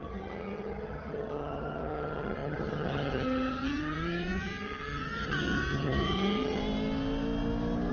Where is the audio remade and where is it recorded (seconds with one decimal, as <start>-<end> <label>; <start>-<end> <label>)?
0.0-6.6 remade; 6.6-7.9 recorded